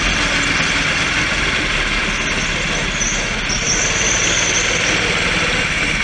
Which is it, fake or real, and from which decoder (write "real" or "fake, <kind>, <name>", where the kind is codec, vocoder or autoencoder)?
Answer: real